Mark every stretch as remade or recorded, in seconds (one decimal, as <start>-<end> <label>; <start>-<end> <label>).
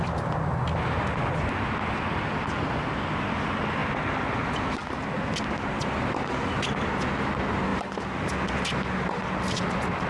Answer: 0.0-10.1 recorded